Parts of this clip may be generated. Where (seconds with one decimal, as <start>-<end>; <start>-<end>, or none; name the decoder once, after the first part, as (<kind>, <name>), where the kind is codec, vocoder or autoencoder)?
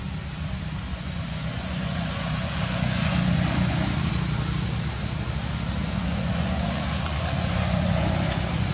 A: 0.9-4.1 (vocoder, Vocos); 5.8-8.7